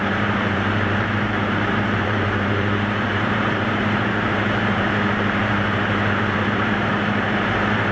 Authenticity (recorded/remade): remade